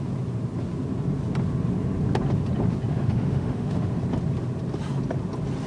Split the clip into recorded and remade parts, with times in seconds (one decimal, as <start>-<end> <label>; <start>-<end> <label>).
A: 0.0-2.9 recorded; 2.9-3.9 remade; 3.9-5.7 recorded